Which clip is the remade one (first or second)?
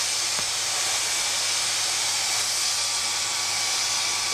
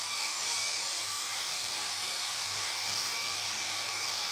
second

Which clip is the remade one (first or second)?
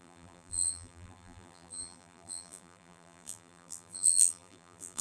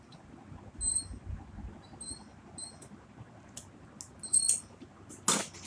first